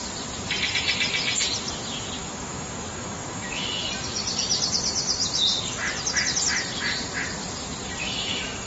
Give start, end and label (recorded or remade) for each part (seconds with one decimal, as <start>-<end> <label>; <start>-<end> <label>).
0.0-2.2 recorded; 2.2-3.8 remade; 3.8-8.0 recorded; 8.0-8.7 remade